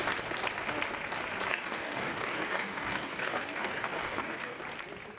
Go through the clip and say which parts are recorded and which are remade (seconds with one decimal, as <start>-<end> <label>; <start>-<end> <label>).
0.0-1.5 recorded; 1.5-4.6 remade; 4.6-5.2 recorded